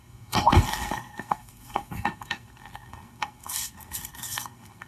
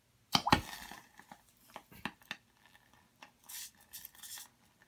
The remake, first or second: first